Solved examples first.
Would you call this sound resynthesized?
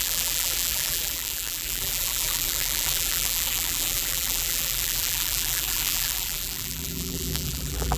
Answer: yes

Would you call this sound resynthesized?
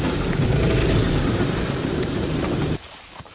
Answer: yes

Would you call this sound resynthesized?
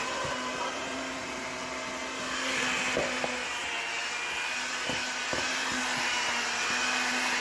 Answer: no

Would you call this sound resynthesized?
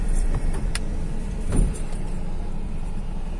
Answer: yes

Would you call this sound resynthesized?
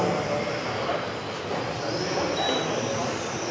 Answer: no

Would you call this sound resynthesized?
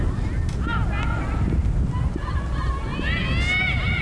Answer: no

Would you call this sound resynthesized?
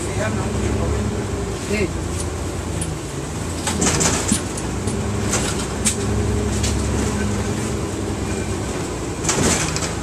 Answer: no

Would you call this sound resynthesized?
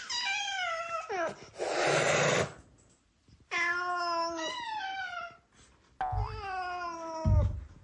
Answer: no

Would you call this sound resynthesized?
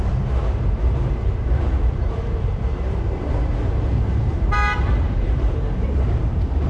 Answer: yes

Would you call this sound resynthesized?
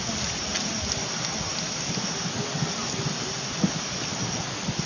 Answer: yes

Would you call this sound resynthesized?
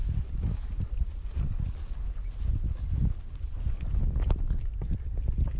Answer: no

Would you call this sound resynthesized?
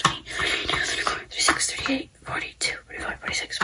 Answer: yes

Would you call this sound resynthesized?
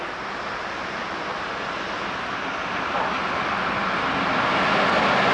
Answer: no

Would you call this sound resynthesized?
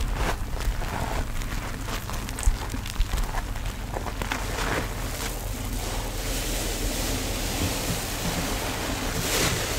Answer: no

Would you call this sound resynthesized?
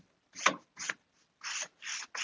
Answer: no